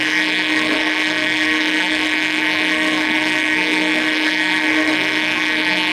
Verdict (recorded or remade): remade